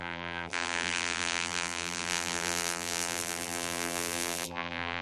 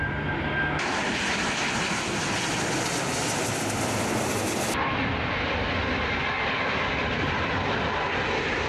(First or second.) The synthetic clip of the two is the first